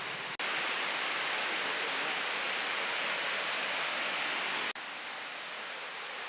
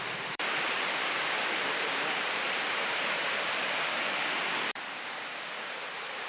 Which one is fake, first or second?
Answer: second